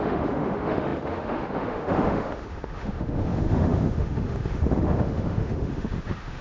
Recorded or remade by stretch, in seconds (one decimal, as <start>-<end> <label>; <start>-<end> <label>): 0.0-6.4 remade